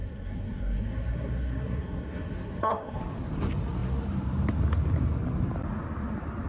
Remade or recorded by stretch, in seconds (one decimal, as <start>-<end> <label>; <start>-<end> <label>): 0.0-3.0 remade; 3.0-6.5 recorded